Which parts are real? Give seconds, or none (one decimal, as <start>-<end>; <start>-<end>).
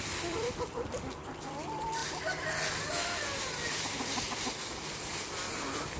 0.0-6.0